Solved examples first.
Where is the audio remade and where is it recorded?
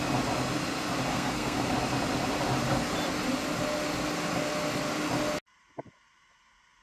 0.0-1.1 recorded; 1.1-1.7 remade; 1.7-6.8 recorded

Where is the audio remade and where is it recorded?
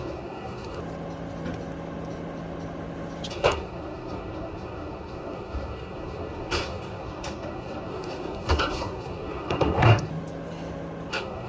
0.0-0.8 remade; 0.8-3.3 recorded; 3.3-10.1 remade; 10.1-11.1 recorded; 11.1-11.5 remade